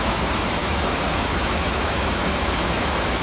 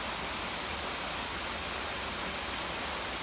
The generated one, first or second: first